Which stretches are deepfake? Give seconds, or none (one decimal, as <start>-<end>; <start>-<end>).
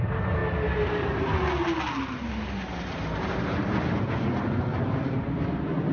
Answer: none